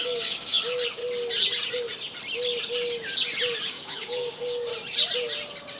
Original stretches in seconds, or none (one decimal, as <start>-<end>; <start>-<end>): 1.0-3.6; 4.7-5.8